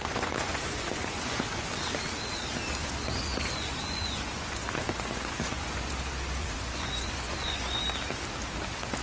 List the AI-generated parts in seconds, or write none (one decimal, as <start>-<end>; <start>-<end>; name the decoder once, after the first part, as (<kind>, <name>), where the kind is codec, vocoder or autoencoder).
0.0-1.7 (vocoder, Vocos); 2.8-5.9; 6.4-7.8